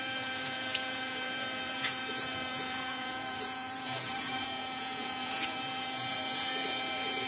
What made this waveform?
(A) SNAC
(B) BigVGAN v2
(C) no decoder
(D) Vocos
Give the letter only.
D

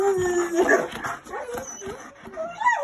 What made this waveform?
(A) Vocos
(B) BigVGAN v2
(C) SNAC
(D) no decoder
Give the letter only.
D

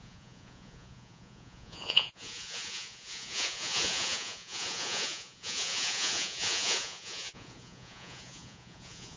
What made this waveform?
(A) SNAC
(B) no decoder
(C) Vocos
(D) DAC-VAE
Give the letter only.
C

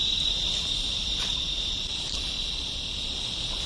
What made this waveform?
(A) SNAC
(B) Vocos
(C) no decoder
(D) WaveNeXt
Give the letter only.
C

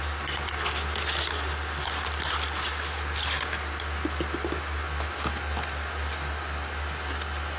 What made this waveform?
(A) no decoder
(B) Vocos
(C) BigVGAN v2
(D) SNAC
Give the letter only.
A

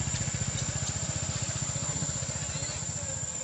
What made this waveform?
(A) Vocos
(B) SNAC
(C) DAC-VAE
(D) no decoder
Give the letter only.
D